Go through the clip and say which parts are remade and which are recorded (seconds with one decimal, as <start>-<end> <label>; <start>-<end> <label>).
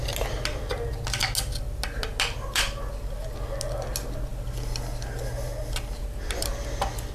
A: 0.0-7.1 recorded